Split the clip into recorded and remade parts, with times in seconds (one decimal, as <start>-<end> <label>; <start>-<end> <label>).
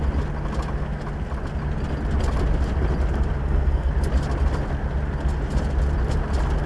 0.0-3.4 recorded; 3.4-3.9 remade; 3.9-6.7 recorded